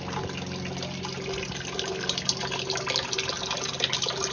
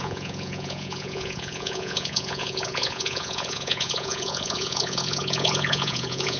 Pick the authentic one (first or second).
first